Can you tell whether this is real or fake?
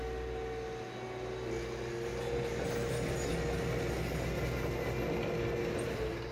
real